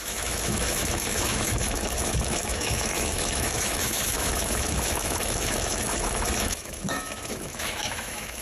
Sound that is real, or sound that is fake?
fake